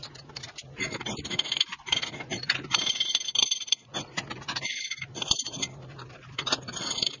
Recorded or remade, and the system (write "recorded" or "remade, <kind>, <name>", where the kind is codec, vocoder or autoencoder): remade, vocoder, BigVGAN v2